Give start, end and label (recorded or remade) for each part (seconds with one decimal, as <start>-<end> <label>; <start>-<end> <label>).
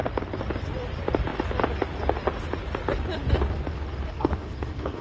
0.0-4.1 recorded; 4.1-5.0 remade